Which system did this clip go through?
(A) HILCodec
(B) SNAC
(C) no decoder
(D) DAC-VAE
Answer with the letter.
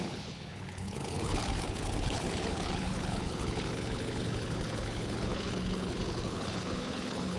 A